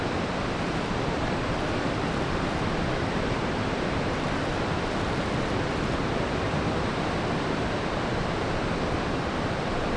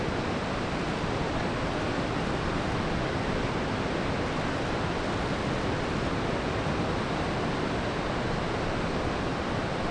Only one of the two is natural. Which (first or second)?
second